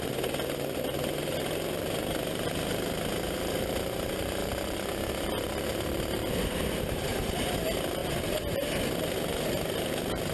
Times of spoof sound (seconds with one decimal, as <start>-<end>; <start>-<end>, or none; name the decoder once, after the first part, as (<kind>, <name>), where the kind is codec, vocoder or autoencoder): none